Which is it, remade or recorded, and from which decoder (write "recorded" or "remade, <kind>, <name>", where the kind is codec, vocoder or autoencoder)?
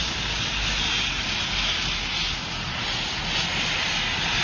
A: recorded